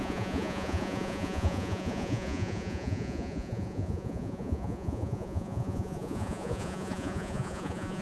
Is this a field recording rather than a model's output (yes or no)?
no